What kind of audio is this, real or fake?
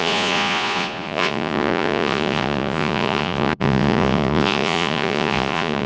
fake